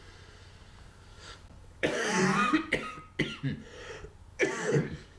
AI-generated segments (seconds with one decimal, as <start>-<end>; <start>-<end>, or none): 1.1-2.2; 4.3-5.2